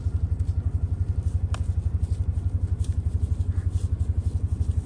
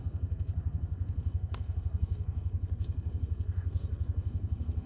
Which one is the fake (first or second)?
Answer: second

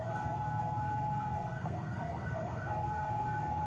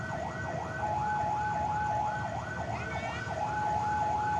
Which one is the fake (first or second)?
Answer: first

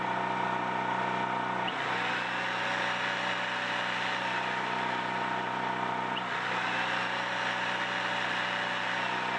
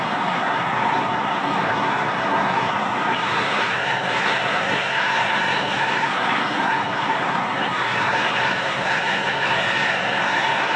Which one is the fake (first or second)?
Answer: second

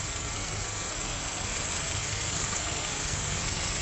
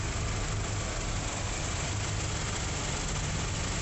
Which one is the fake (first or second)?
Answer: first